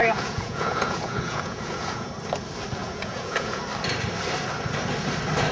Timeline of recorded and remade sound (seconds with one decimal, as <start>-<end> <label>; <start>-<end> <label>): 0.0-2.1 remade; 2.1-2.8 recorded; 2.8-3.6 remade; 3.6-5.5 recorded